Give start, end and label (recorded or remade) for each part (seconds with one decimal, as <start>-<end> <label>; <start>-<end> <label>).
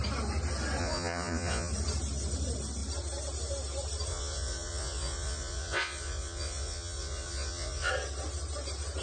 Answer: 0.0-0.8 recorded; 0.8-1.7 remade; 1.7-4.1 recorded; 4.1-7.9 remade; 7.9-9.0 recorded